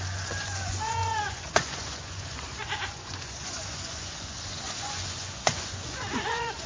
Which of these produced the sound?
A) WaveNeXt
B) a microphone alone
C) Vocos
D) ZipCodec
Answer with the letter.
C